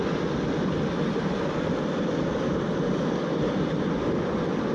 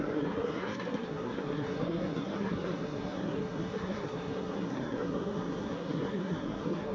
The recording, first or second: first